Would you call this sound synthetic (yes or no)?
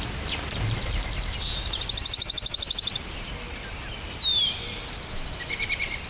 no